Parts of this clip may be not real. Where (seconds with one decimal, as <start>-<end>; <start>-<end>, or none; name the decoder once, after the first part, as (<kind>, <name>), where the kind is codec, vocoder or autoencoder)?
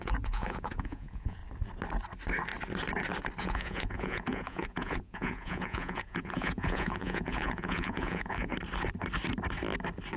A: 0.0-1.4 (vocoder, Vocos); 3.4-8.5